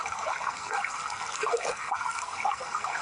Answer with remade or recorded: remade